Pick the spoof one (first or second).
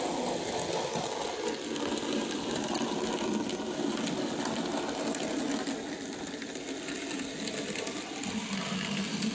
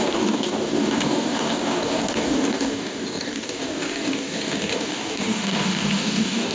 second